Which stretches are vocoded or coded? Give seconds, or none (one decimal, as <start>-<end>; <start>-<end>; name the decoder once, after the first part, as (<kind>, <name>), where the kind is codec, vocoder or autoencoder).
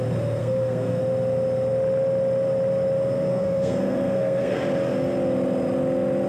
0.4-1.0 (codec, SNAC); 3.3-4.6